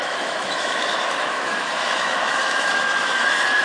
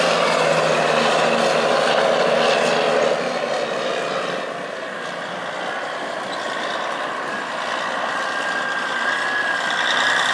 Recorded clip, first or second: second